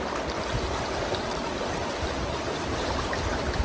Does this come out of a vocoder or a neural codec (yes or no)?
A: yes